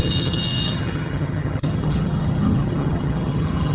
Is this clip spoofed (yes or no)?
yes